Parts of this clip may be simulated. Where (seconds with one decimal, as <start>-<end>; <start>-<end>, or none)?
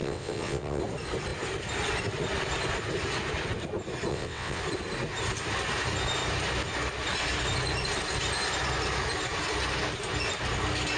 0.0-0.8; 4.1-4.6